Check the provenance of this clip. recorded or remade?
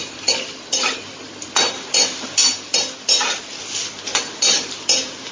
recorded